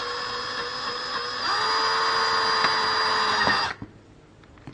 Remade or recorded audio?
recorded